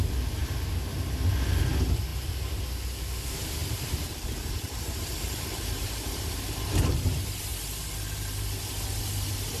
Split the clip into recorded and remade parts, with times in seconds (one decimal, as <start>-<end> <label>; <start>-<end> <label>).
0.0-2.1 recorded; 2.1-2.6 remade; 2.6-3.6 recorded; 3.6-6.3 remade; 6.3-9.6 recorded